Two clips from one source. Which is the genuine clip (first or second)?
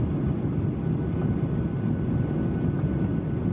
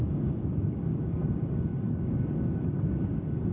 first